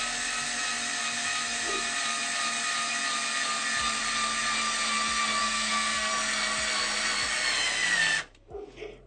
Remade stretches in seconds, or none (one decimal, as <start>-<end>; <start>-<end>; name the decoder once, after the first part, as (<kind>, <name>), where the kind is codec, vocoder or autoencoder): 5.4-6.1 (codec, SNAC)